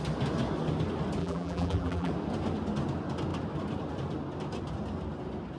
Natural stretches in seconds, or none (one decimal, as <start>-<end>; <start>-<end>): 0.0-1.2; 2.1-5.6